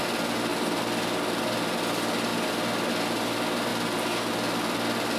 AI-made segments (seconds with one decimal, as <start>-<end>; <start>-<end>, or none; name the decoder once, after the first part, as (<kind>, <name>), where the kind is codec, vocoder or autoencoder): none